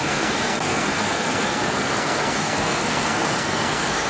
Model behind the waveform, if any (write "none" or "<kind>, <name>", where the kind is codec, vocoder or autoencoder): codec, SNAC